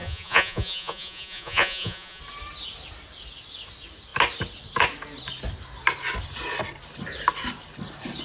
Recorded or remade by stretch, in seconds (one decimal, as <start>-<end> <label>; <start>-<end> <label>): 0.0-2.2 remade; 2.2-8.2 recorded